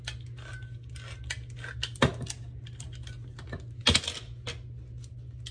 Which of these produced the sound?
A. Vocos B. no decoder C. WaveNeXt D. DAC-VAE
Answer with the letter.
B